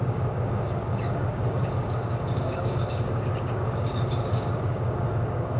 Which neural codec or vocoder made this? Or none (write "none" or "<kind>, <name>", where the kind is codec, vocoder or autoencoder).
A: codec, DAC